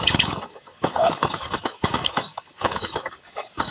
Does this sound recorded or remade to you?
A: remade